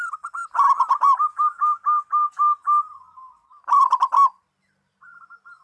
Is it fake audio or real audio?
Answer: real